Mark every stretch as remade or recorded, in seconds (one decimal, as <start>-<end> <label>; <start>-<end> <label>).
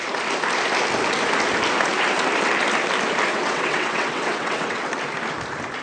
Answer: 0.0-3.3 recorded; 3.3-4.9 remade; 4.9-5.8 recorded